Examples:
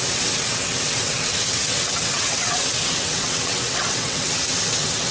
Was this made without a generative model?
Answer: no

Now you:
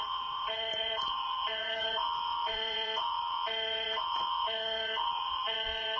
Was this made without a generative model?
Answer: no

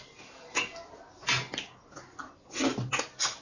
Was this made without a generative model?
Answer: yes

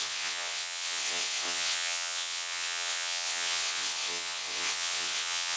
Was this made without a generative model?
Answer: no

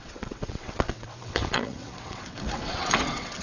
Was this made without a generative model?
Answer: no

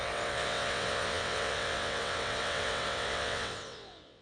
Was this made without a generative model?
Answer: no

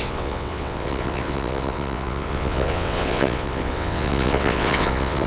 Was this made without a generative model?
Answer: no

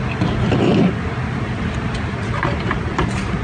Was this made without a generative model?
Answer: yes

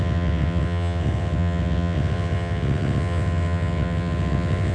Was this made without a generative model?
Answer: no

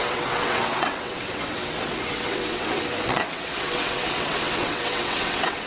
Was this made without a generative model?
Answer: no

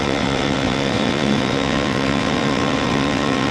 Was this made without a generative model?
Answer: no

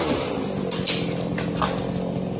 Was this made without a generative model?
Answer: yes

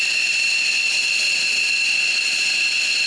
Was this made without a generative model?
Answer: yes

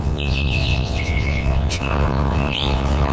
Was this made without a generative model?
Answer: no